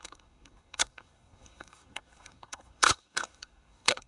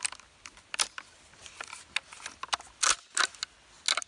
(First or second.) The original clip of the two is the second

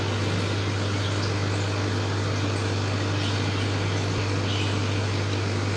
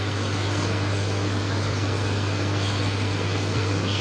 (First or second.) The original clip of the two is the first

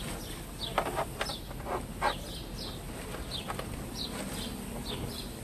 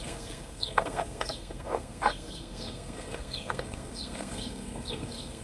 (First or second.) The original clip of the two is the first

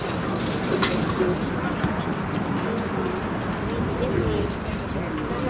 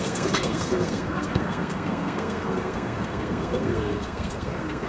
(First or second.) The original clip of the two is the first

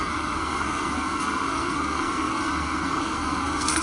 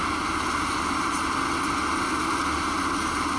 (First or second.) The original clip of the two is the second